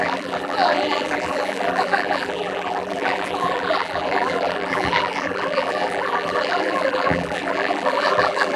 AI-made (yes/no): yes